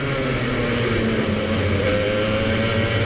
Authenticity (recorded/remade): recorded